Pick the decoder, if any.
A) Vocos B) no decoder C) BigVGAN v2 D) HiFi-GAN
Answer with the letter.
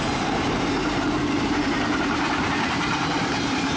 C